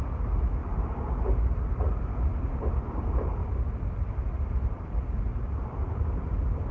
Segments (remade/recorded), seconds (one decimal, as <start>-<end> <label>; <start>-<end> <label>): 0.0-6.7 remade